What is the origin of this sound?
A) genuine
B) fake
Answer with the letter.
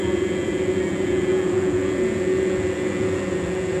B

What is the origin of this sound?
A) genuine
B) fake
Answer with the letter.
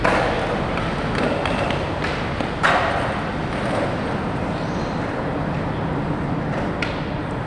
A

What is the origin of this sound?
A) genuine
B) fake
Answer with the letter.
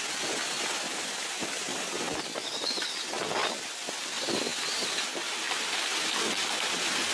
B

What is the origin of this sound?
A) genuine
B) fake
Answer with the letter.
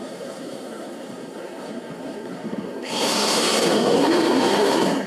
B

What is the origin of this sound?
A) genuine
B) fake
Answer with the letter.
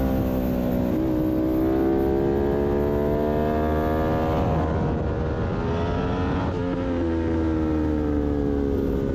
A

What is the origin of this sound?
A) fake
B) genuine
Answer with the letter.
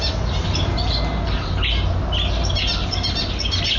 B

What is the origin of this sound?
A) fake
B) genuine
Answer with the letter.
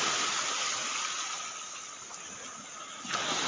B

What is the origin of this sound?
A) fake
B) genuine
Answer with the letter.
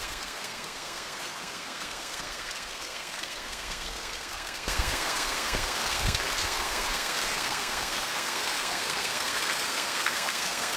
A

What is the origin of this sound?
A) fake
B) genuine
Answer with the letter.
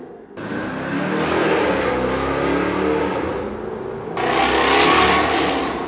B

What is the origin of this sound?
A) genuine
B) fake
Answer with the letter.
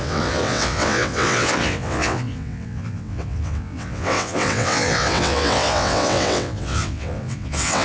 B